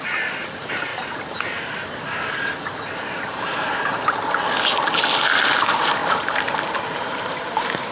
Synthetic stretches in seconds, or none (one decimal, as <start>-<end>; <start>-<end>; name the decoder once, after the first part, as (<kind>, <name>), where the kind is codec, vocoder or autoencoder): 0.0-0.9 (vocoder, BigVGAN v2); 5.6-7.9